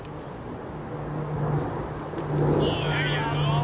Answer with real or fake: real